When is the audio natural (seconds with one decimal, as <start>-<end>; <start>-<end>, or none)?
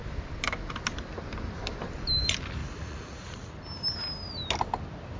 0.0-2.6; 3.5-5.2